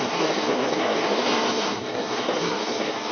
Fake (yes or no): yes